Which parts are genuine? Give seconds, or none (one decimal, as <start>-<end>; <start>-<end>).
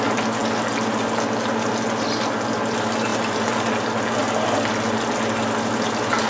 0.0-6.3